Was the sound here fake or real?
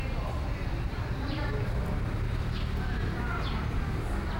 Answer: real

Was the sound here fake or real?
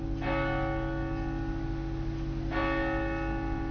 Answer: real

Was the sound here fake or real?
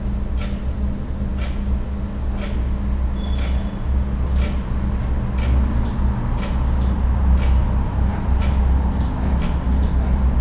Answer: real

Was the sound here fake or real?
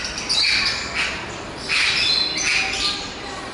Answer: real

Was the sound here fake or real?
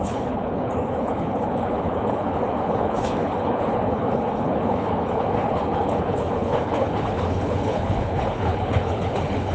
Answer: fake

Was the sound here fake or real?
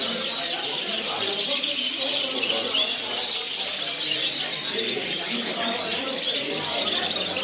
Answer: fake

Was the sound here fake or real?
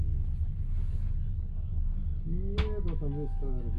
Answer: real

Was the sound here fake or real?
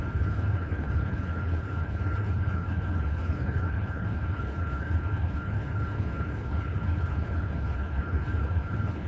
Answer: fake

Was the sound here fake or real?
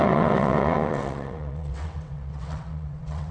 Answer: fake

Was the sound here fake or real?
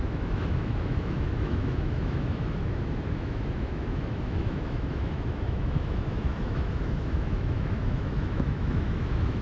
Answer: fake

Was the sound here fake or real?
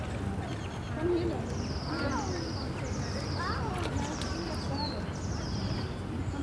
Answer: real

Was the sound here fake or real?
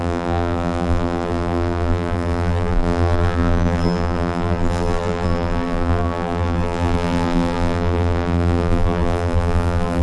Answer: fake